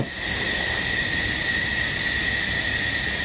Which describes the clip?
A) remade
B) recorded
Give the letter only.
B